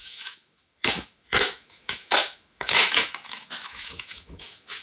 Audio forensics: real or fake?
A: fake